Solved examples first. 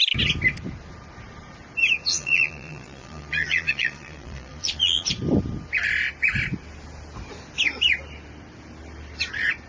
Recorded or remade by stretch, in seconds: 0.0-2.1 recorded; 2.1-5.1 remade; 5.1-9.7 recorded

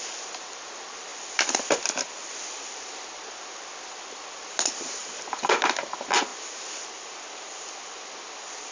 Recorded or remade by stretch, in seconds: 0.0-5.0 recorded; 5.0-5.5 remade; 5.5-6.3 recorded; 6.3-7.7 remade; 7.7-8.7 recorded

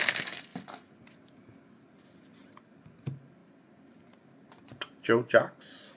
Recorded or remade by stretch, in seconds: 0.0-6.0 recorded